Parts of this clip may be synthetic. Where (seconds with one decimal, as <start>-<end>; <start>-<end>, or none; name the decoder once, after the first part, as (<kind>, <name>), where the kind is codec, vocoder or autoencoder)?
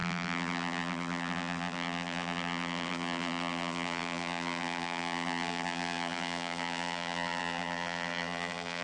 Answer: 0.0-8.8 (vocoder, BigVGAN v2)